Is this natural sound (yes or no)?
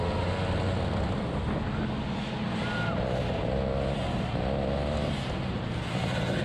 yes